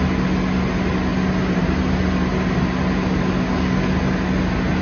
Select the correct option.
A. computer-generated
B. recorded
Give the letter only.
B